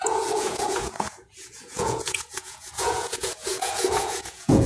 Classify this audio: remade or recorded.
remade